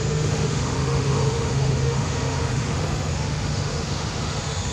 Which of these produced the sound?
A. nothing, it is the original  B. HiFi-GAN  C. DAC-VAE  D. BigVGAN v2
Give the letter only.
C